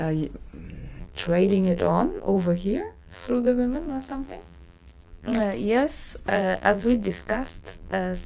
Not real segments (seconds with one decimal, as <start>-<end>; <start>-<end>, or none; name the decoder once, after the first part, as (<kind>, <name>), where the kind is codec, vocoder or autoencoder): 1.0-5.4 (vocoder, BigVGAN v2); 6.3-8.3